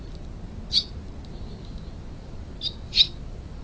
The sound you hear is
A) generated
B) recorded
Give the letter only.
B